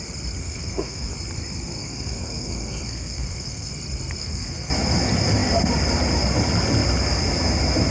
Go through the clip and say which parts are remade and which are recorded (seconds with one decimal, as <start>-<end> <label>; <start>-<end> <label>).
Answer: 0.0-0.4 recorded; 0.4-1.1 remade; 1.1-1.8 recorded; 1.8-3.7 remade; 3.7-4.2 recorded; 4.2-4.7 remade; 4.7-7.9 recorded